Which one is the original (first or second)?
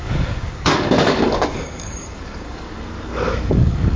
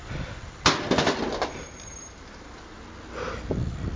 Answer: second